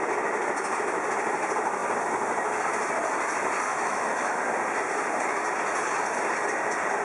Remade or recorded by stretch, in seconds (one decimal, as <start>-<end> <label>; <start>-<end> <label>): 0.0-3.7 recorded; 3.7-4.4 remade; 4.4-7.0 recorded